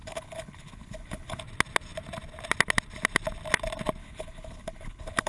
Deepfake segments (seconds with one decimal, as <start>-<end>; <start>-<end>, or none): 0.0-1.4; 4.0-5.3